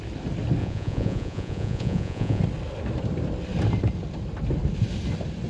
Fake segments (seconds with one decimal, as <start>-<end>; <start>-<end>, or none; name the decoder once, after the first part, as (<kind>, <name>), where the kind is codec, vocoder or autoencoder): 0.6-2.4 (vocoder, Vocos)